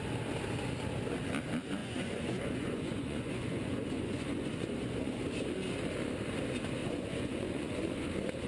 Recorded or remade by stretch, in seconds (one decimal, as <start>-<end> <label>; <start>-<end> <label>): 0.0-1.8 recorded; 1.8-5.2 remade; 5.2-6.8 recorded; 6.8-8.1 remade; 8.1-8.5 recorded